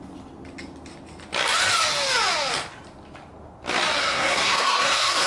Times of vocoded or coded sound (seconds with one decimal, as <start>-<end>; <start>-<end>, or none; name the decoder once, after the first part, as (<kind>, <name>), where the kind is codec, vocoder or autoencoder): 4.0-5.3 (codec, SNAC)